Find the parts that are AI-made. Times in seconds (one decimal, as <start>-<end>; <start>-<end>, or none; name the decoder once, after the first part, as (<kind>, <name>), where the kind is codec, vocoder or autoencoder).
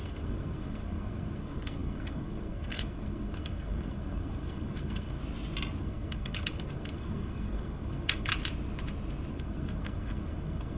0.0-5.2 (codec, SNAC); 5.8-8.3; 9.3-10.8